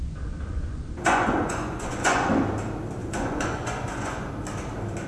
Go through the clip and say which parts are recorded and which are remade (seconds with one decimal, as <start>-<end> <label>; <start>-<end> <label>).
0.0-0.5 recorded; 0.5-2.3 remade; 2.3-3.0 recorded; 3.0-4.3 remade; 4.3-5.1 recorded